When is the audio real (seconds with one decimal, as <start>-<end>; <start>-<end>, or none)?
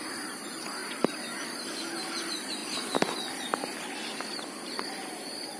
0.8-2.2; 2.6-4.7